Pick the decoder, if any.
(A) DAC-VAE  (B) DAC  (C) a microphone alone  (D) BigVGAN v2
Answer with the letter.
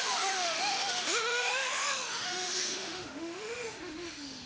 A